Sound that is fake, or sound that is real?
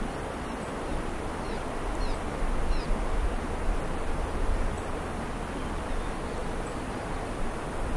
real